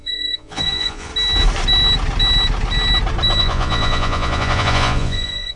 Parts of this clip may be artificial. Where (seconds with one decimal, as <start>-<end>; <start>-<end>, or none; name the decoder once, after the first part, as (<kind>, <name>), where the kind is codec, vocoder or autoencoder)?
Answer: 0.0-1.1 (vocoder, Vocos); 3.4-5.6